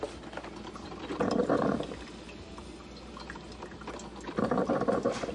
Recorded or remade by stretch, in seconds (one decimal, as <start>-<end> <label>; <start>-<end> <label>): 0.0-5.3 recorded